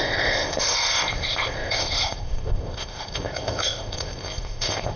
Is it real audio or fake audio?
fake